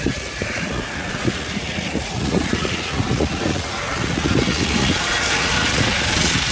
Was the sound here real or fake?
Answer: fake